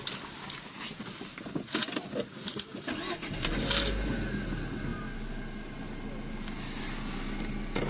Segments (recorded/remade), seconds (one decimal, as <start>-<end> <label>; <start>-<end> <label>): 0.0-7.9 recorded